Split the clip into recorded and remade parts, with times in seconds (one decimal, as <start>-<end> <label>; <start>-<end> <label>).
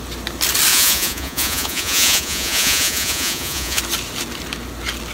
0.0-0.7 recorded; 0.7-3.8 remade; 3.8-5.1 recorded